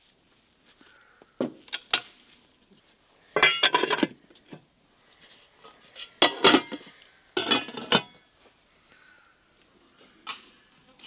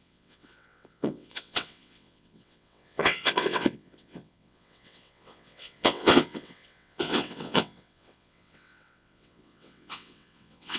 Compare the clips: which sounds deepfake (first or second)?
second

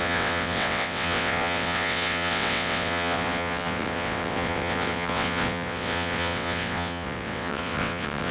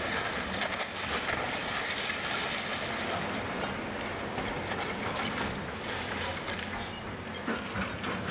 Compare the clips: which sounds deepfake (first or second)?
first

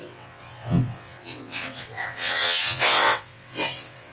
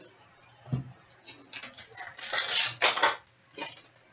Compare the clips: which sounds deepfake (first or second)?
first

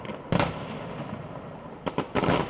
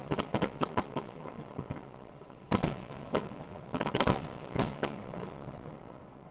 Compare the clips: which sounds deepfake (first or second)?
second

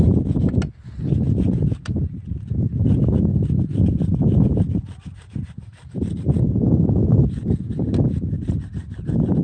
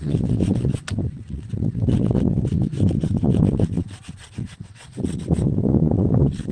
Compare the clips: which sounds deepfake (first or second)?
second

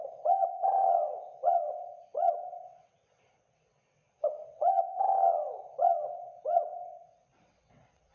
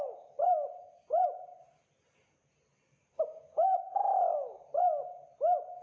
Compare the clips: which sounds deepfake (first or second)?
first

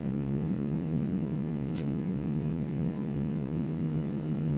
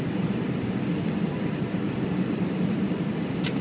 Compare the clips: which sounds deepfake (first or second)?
first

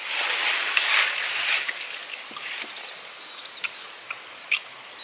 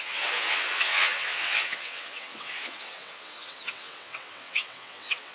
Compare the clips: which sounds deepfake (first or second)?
second